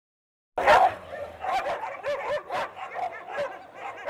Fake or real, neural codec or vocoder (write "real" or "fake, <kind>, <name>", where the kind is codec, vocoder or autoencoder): real